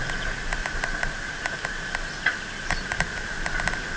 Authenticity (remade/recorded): recorded